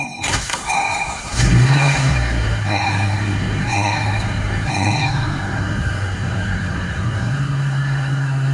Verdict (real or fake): fake